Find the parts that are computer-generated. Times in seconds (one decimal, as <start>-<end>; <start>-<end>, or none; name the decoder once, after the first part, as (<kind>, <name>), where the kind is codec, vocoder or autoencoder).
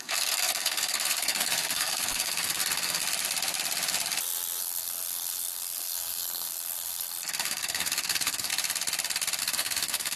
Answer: 0.0-3.0 (codec, SNAC); 4.6-8.5; 9.4-10.2